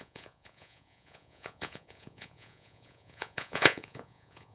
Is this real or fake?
fake